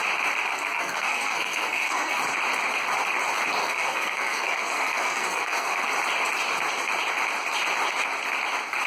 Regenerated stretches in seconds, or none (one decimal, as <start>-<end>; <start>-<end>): 0.5-2.2; 3.6-5.9